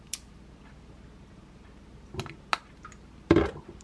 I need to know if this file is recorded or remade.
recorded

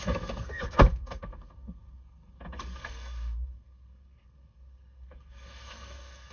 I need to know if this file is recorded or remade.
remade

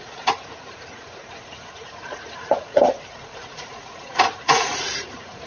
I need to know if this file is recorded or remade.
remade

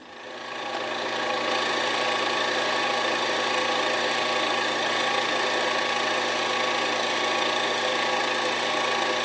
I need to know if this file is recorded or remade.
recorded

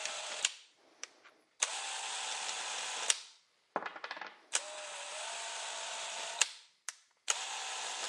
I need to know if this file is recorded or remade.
recorded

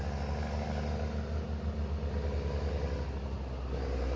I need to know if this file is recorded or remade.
recorded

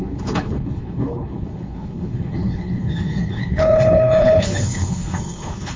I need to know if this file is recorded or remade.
remade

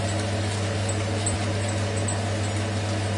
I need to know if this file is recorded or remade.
recorded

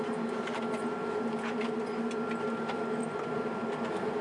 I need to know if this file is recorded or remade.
recorded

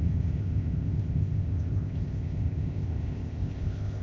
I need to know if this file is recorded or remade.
remade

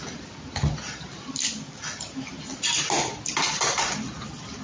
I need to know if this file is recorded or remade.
recorded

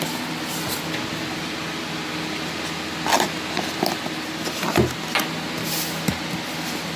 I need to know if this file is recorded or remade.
recorded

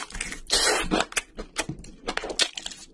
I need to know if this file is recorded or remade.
recorded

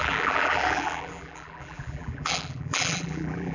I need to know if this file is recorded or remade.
remade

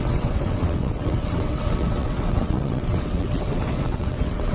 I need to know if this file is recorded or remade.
remade